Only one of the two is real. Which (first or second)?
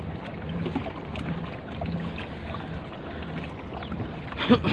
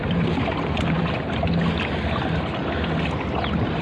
first